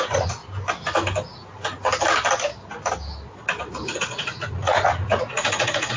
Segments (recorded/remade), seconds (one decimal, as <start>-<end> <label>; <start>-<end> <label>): 0.0-0.4 remade; 0.4-4.0 recorded; 4.0-6.0 remade